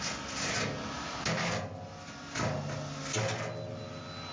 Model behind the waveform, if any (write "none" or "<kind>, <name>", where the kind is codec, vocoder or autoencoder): none